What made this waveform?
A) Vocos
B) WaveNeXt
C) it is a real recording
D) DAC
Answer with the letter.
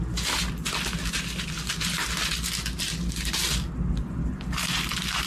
C